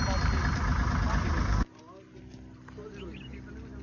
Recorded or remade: recorded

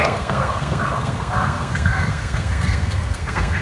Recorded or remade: remade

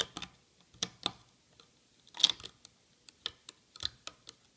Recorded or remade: recorded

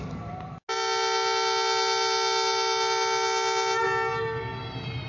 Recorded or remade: recorded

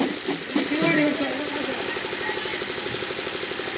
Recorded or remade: recorded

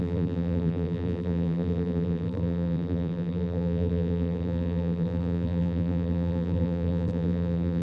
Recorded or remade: remade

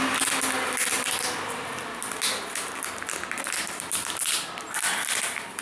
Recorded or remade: recorded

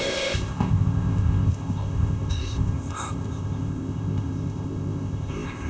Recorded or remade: remade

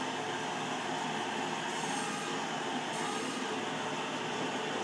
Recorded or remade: recorded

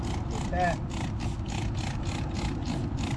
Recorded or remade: recorded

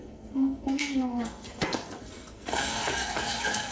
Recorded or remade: remade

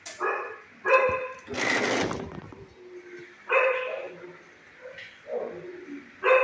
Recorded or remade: remade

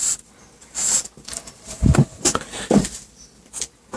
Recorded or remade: remade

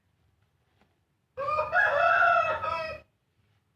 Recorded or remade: recorded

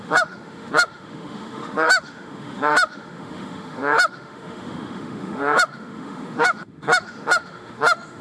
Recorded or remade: remade